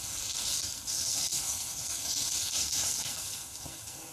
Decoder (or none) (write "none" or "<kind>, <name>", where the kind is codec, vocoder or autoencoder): codec, SNAC